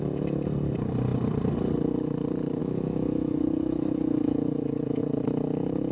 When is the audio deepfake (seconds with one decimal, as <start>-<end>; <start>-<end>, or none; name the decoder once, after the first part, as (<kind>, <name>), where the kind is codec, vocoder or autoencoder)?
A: 2.6-5.0 (autoencoder, DAC-VAE)